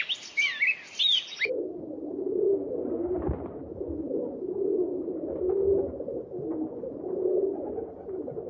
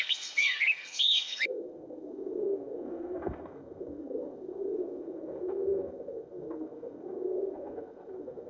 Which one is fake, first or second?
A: second